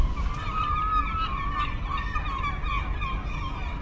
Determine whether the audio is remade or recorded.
recorded